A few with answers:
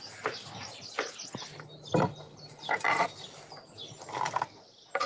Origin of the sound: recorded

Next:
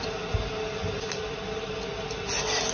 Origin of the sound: recorded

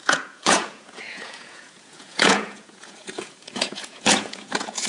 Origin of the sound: remade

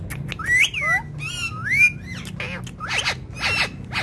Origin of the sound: recorded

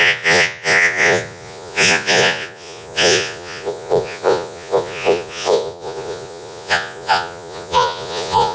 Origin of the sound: remade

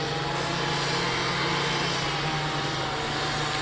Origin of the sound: recorded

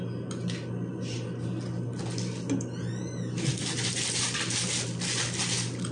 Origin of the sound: recorded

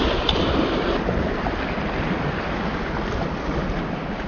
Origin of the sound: recorded